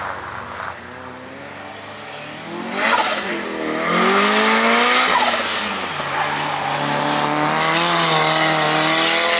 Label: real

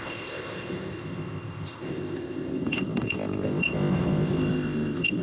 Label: fake